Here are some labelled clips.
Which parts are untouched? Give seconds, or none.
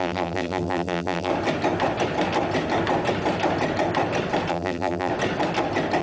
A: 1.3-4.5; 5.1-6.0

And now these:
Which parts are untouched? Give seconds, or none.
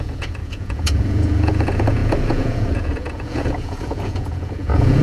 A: none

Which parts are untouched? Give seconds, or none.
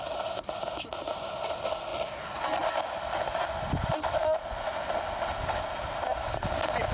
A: 0.0-6.9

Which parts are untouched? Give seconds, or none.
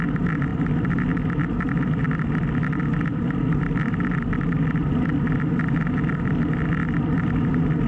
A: 0.0-3.1; 4.9-7.9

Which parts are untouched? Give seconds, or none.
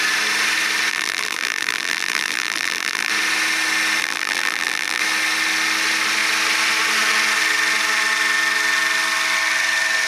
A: 0.0-0.9; 3.1-4.0; 5.0-10.1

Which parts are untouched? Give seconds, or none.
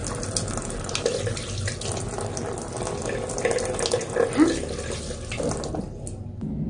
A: 0.0-6.7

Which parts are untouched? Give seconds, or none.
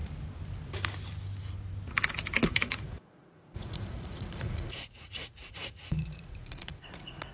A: 0.0-2.5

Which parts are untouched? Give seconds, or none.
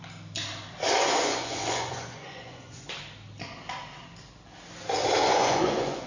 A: 0.0-1.0; 2.9-5.2